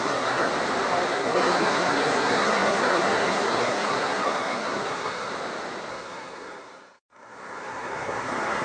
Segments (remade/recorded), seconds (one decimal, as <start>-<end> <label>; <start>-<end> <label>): 0.0-0.5 remade; 0.5-1.1 recorded; 1.1-5.3 remade; 5.3-5.9 recorded; 5.9-8.6 remade